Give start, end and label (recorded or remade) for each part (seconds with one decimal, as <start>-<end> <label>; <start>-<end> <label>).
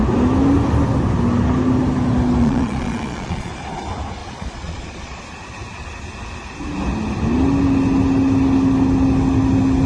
0.0-2.4 recorded; 2.4-3.5 remade; 3.5-4.2 recorded; 4.2-5.2 remade; 5.2-9.9 recorded